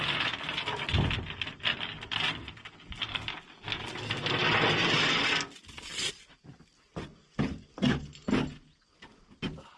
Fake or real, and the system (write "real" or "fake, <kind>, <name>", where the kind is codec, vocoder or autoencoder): real